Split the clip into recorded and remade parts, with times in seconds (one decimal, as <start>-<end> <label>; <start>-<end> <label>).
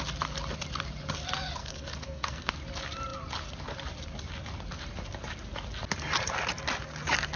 0.0-1.6 recorded; 1.6-2.5 remade; 2.5-7.4 recorded